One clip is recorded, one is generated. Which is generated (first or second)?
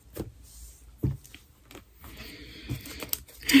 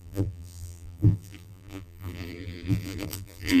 second